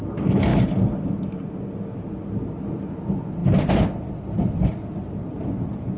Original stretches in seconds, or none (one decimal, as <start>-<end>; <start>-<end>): 0.0-3.4; 4.7-6.0